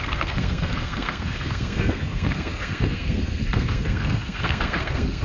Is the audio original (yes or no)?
no